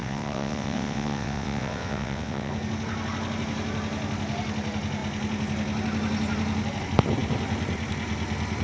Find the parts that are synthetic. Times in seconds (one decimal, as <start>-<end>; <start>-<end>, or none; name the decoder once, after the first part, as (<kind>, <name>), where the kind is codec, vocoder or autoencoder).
0.0-2.5 (vocoder, WaveNeXt)